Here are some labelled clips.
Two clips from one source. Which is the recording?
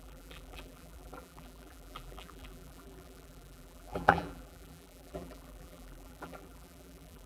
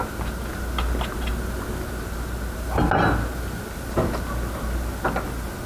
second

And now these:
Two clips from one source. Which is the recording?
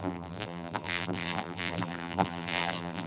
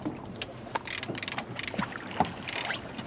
second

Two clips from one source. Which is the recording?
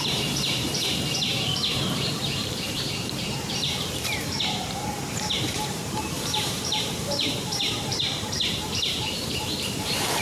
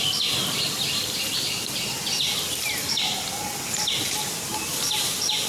second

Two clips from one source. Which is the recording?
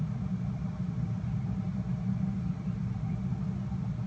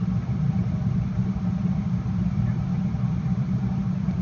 first